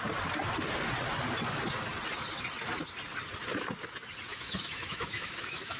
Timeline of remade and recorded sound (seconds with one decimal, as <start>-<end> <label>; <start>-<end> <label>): 0.0-4.3 recorded; 4.3-5.8 remade